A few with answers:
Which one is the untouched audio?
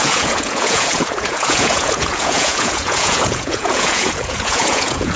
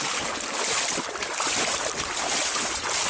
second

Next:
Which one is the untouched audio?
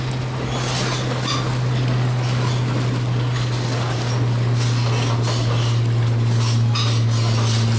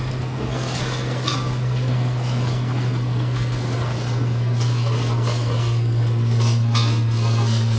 first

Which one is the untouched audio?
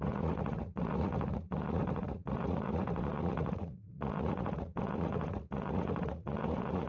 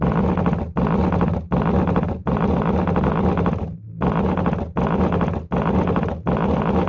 second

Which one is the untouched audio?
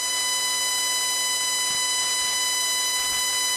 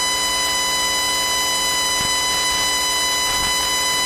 first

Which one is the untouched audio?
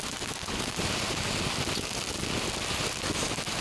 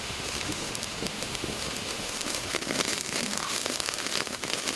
first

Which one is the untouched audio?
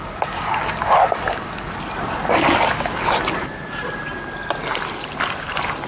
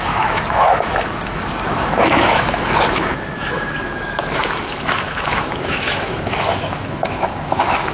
first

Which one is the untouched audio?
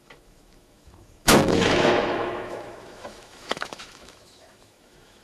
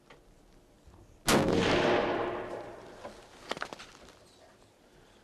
second